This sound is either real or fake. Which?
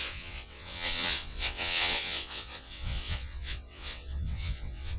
fake